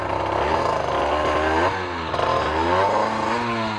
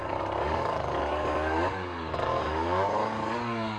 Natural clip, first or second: first